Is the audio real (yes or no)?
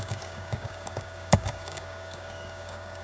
no